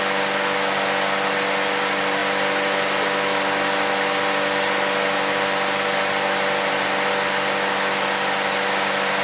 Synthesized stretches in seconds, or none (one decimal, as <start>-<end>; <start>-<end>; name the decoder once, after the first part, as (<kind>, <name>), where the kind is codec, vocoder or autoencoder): none